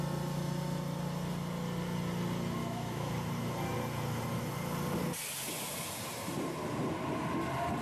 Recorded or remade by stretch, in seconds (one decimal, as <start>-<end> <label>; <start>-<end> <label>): 0.0-2.6 recorded; 2.6-3.1 remade; 3.1-7.8 recorded